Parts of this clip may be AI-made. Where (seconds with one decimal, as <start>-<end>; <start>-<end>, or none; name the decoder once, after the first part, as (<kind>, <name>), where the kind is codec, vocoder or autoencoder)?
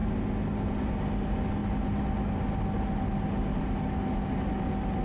none